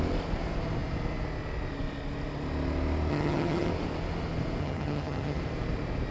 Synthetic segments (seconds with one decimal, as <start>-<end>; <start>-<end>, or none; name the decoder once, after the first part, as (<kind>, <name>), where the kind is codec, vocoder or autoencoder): 3.1-3.7 (vocoder, HiFi-GAN); 4.6-5.4